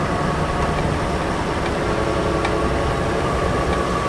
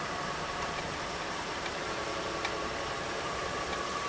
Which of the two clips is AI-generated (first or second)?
second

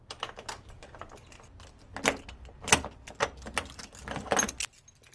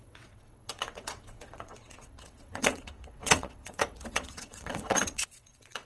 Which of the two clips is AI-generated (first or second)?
second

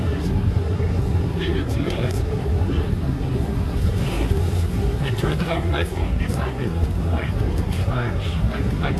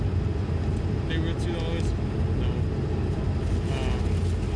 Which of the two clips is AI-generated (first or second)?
first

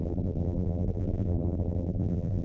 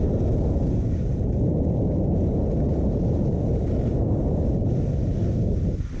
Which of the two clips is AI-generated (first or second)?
first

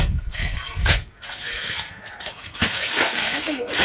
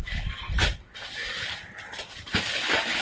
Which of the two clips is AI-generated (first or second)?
first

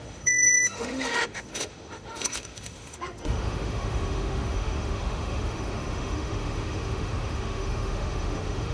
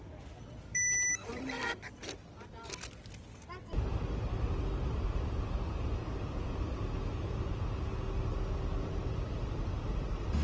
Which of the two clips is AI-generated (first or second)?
first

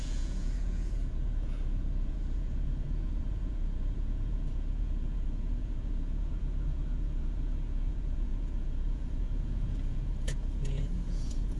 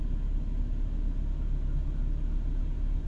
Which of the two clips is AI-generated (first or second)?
first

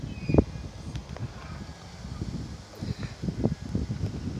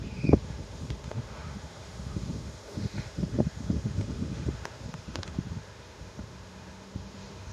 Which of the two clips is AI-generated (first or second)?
second